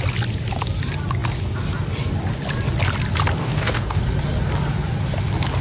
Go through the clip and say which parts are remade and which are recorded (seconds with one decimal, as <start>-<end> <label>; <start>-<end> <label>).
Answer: 0.0-3.4 recorded; 3.4-4.0 remade; 4.0-5.6 recorded